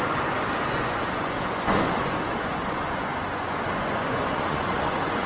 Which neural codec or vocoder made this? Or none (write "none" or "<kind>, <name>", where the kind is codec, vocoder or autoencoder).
vocoder, Vocos